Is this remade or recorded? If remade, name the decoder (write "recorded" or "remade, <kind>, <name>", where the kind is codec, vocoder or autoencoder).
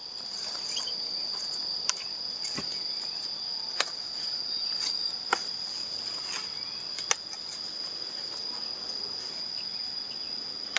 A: recorded